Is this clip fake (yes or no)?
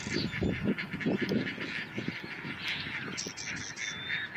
no